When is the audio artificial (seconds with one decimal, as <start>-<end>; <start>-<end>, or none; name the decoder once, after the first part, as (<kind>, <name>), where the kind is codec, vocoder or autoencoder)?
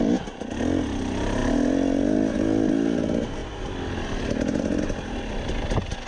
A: none